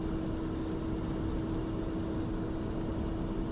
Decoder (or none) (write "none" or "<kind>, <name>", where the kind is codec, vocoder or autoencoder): none